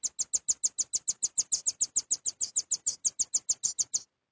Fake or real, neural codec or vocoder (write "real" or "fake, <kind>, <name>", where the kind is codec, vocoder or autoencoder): real